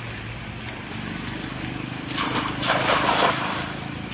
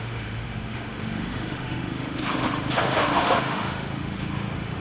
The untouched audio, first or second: first